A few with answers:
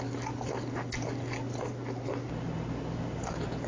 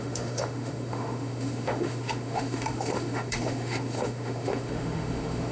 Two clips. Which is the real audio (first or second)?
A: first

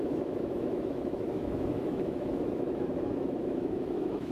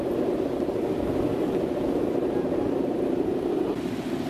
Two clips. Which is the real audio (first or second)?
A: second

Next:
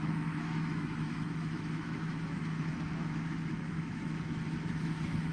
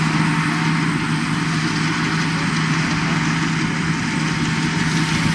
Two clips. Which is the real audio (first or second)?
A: second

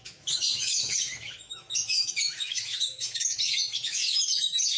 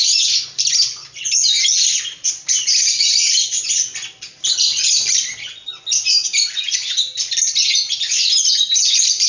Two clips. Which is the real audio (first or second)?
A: second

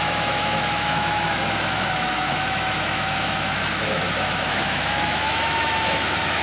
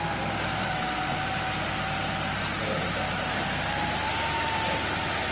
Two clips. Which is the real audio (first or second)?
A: second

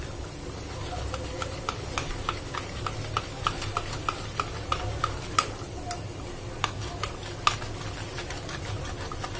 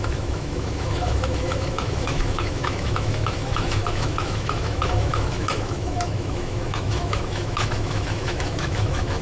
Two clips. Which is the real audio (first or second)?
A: first